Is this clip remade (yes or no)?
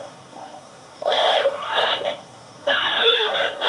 yes